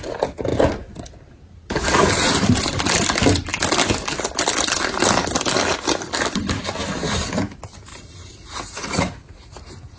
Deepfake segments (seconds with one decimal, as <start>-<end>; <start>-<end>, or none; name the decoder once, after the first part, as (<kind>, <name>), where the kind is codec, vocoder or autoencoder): 7.9-9.0 (vocoder, BigVGAN v2)